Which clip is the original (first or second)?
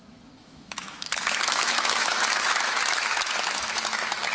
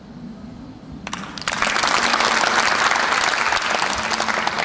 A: second